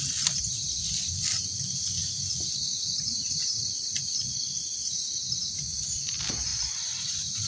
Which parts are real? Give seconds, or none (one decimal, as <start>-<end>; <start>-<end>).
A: 0.0-2.0; 3.3-6.5